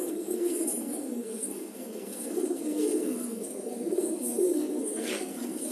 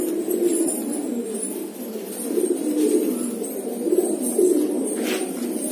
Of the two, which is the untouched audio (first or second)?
second